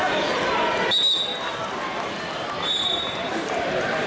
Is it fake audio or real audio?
real